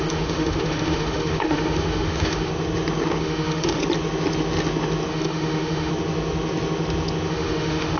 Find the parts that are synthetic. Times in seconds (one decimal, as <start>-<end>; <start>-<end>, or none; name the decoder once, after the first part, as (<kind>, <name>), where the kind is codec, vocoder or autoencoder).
0.0-2.5 (autoencoder, DAC-VAE); 3.2-3.8; 5.1-5.9; 7.3-8.0